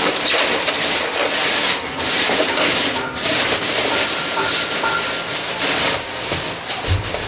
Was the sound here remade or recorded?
remade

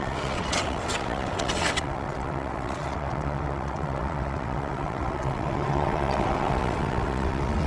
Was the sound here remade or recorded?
remade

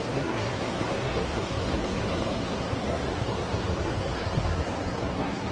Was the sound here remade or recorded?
remade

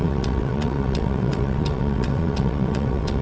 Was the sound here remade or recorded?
remade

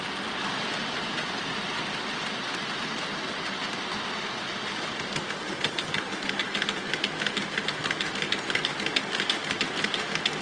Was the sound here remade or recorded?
recorded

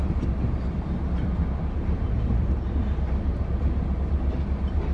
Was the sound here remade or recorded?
recorded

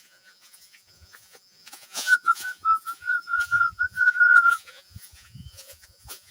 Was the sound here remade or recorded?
remade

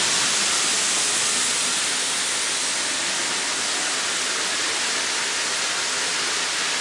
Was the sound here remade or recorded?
recorded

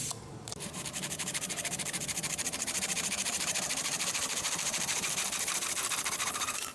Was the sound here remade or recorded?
remade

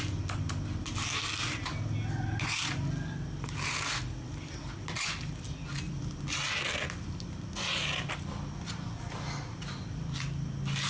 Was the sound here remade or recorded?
recorded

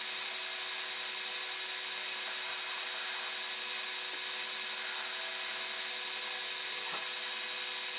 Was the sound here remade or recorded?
recorded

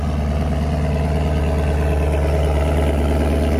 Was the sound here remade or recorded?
recorded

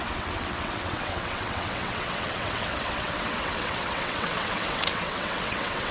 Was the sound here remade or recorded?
remade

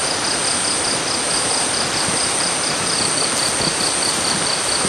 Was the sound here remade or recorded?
recorded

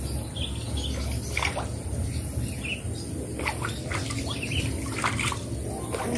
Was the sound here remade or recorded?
recorded